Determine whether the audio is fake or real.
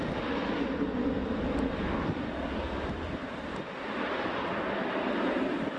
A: real